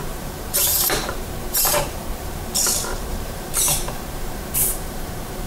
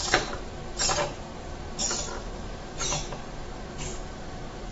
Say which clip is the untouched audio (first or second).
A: second